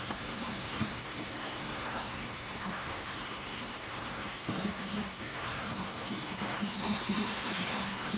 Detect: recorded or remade remade